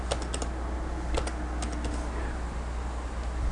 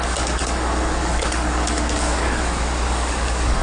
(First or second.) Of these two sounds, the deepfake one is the second